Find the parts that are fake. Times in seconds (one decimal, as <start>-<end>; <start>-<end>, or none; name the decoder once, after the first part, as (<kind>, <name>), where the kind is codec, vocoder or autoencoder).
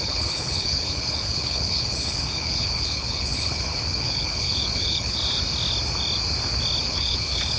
0.0-5.2 (codec, HILCodec); 6.9-7.6